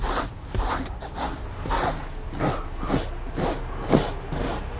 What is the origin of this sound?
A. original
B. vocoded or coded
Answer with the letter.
A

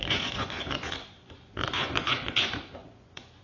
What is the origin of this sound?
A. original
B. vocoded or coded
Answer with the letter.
B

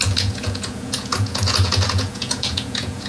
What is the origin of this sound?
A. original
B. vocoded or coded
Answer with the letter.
B